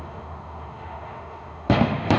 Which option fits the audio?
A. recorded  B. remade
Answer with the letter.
B